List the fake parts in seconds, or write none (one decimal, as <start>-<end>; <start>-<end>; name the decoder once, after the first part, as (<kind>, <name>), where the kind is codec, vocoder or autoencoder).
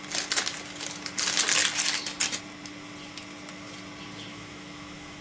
4.3-5.2 (autoencoder, DAC-VAE)